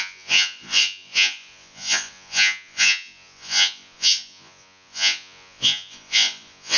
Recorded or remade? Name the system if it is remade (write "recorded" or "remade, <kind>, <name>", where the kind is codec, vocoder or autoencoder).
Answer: remade, vocoder, Vocos